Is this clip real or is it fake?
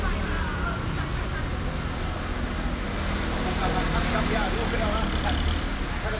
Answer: real